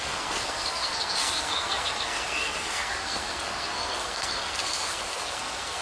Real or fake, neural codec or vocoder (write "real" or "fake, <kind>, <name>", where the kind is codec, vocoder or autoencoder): fake, codec, SNAC